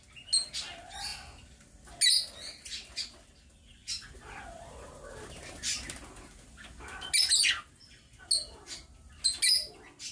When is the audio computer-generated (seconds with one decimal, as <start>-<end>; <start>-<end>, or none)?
none